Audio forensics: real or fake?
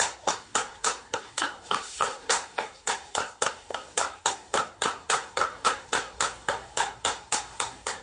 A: fake